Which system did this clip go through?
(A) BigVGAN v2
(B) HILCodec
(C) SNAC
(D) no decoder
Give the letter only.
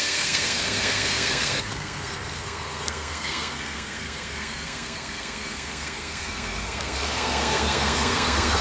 C